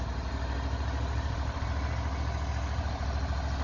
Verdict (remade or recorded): recorded